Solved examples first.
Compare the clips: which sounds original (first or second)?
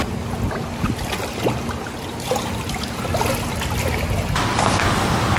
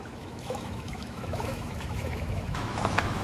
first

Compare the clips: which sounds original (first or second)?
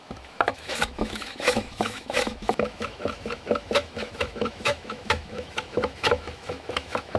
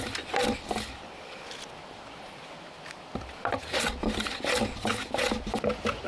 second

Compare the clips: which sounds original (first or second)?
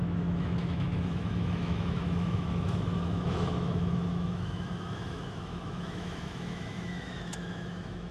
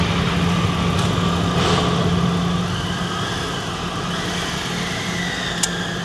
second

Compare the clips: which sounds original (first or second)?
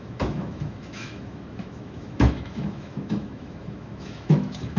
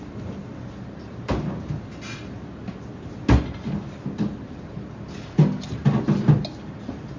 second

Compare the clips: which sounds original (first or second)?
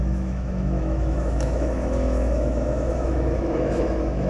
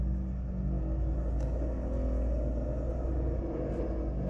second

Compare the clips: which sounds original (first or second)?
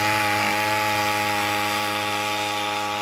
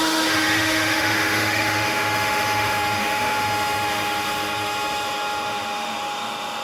first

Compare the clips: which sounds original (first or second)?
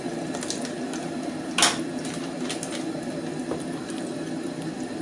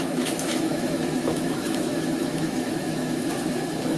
first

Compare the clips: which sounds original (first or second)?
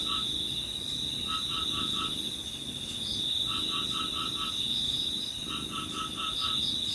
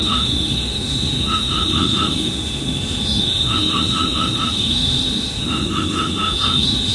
first